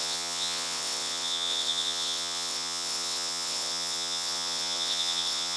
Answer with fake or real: fake